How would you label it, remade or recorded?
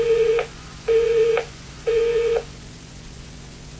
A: remade